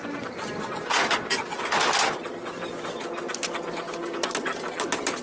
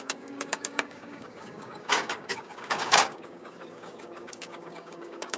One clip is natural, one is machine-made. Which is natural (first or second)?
first